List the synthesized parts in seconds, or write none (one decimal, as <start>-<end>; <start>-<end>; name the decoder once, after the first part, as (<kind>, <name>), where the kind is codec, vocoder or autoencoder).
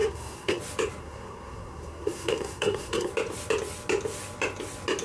0.0-0.6 (codec, SNAC); 1.0-3.1